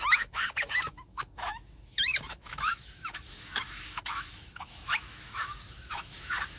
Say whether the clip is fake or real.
fake